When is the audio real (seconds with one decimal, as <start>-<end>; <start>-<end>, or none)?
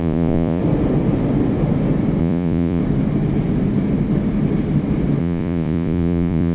0.6-2.2; 2.8-5.2